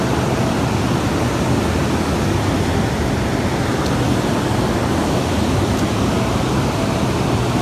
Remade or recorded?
recorded